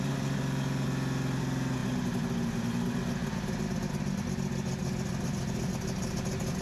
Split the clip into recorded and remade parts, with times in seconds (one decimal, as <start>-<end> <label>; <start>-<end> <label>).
0.0-6.6 recorded

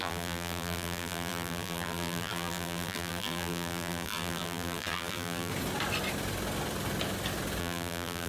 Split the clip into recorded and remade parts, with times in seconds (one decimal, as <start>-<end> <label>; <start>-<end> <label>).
0.0-5.5 remade; 5.5-7.6 recorded; 7.6-8.3 remade

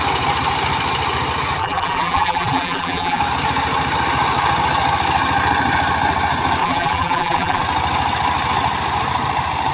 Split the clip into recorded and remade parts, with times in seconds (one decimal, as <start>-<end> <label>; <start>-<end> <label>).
0.0-1.6 recorded; 1.6-3.2 remade; 3.2-6.6 recorded; 6.6-7.6 remade; 7.6-9.7 recorded

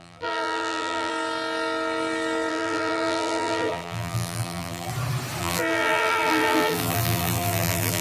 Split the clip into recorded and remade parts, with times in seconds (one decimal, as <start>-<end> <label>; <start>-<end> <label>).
0.0-1.1 remade; 1.1-2.5 recorded; 2.5-4.9 remade; 4.9-5.4 recorded; 5.4-8.0 remade

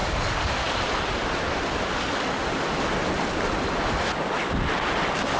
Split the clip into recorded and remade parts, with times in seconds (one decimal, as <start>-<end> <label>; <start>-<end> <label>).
0.0-2.0 remade; 2.0-5.4 recorded

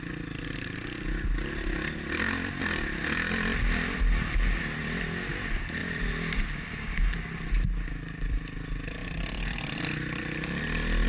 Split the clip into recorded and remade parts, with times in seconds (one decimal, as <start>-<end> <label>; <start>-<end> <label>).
0.0-3.5 recorded; 3.5-4.6 remade; 4.6-5.8 recorded; 5.8-6.7 remade; 6.7-9.0 recorded; 9.0-9.6 remade; 9.6-11.1 recorded